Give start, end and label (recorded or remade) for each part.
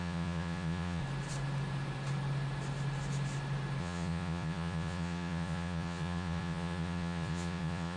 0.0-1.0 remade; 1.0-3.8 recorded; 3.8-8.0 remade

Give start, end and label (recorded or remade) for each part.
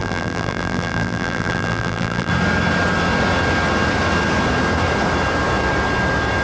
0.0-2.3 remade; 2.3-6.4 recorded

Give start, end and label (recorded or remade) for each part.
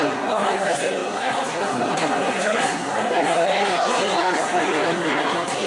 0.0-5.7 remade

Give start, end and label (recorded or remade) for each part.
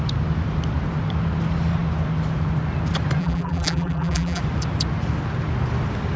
0.0-3.2 recorded; 3.2-4.4 remade; 4.4-6.2 recorded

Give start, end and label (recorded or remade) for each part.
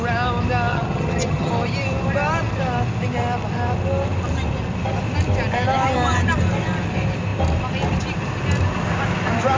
0.0-0.7 recorded; 0.7-1.5 remade; 1.5-9.6 recorded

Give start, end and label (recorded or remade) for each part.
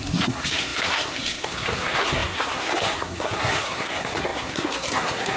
0.0-5.4 remade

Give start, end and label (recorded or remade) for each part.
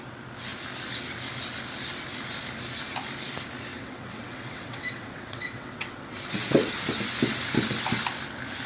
0.0-3.7 recorded; 3.7-6.8 remade; 6.8-8.7 recorded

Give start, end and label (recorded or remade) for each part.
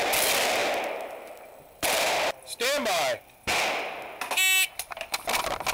0.0-5.7 recorded